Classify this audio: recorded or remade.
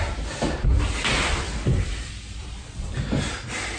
recorded